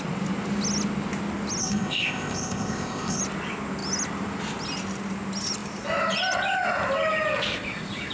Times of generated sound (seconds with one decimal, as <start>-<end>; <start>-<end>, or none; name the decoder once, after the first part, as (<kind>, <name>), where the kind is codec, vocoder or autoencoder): 1.6-3.2 (codec, ZipCodec)